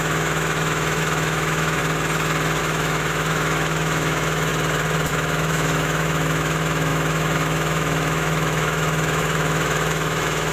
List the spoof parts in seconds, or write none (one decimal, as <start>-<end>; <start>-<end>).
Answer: 0.0-1.8; 2.6-4.5; 5.1-10.5